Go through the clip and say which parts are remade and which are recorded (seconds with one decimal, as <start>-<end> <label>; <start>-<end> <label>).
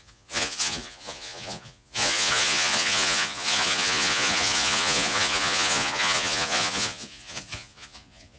0.0-8.4 remade